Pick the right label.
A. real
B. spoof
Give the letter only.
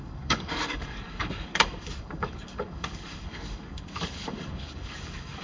B